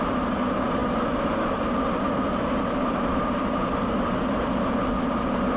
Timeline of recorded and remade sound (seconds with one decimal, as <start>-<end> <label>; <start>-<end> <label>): 0.0-5.6 recorded